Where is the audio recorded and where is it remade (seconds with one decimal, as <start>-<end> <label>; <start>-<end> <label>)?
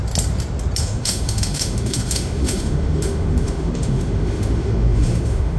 0.0-0.8 recorded; 0.8-5.6 remade